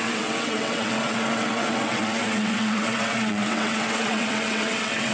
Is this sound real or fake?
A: fake